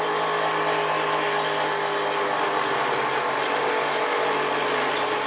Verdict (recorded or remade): recorded